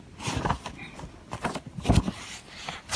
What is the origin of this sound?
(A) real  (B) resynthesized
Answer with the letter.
A